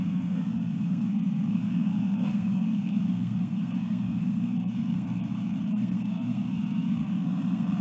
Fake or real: fake